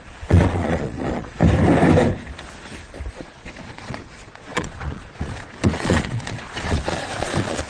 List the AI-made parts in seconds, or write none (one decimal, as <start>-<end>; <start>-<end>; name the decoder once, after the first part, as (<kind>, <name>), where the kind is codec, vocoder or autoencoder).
0.0-1.4 (vocoder, Vocos); 3.1-7.7